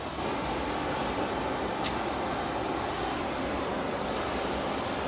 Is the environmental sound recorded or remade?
recorded